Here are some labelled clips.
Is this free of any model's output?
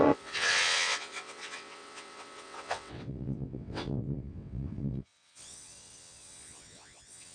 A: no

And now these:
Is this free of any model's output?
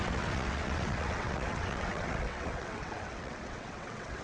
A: no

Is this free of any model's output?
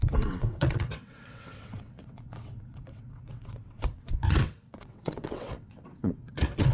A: no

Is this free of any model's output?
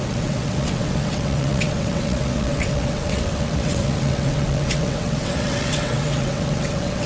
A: no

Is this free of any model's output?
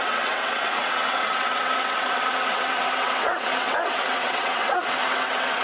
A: no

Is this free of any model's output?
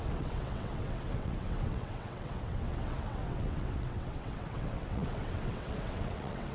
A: no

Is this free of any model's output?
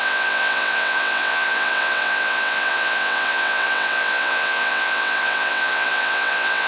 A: no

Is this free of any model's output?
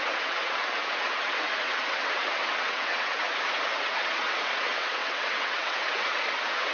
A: no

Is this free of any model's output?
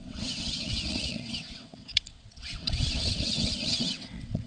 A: no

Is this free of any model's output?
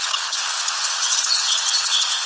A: no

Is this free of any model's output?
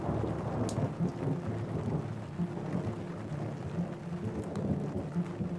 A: yes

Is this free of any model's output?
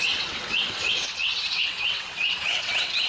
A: no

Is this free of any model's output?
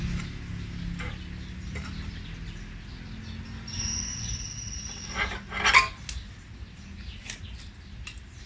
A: yes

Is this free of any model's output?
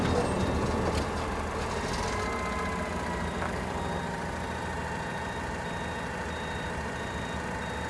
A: yes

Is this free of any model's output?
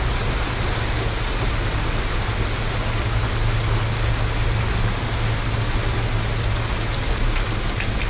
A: yes